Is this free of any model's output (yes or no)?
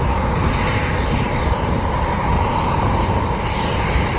no